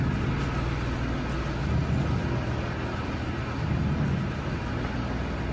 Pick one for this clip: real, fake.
real